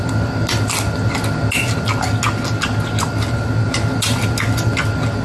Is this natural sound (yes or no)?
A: yes